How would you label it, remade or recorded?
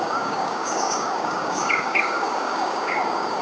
remade